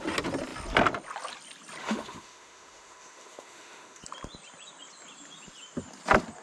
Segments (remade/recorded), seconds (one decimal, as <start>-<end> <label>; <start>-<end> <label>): 0.0-1.8 recorded; 1.8-4.0 remade; 4.0-6.4 recorded